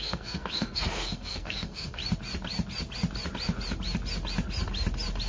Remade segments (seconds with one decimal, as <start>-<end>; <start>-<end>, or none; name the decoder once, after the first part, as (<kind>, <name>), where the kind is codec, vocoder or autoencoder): 0.0-2.0 (codec, SNAC)